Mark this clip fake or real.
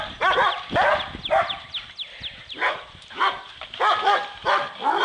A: real